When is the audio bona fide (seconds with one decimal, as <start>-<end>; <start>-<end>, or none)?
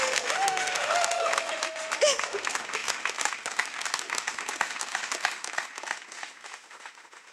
none